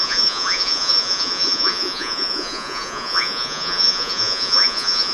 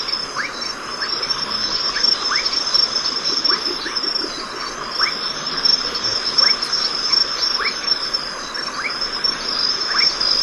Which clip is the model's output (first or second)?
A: first